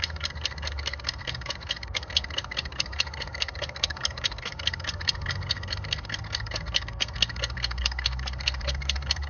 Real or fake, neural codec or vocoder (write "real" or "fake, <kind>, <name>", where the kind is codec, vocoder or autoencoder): fake, codec, SNAC